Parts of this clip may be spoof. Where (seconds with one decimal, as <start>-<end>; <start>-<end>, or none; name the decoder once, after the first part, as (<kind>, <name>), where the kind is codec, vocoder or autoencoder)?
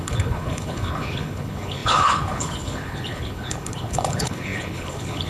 0.0-5.3 (codec, HILCodec)